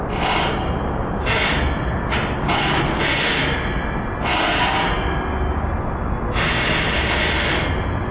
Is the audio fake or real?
real